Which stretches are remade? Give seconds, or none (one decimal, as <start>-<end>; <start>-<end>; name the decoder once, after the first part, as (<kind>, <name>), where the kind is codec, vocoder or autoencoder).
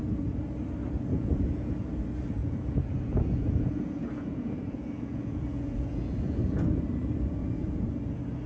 1.1-1.9 (vocoder, Vocos); 2.4-6.8; 7.4-7.9